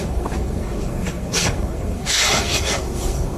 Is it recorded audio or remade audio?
remade